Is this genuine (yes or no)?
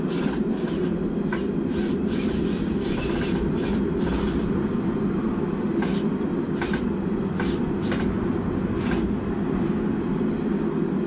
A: yes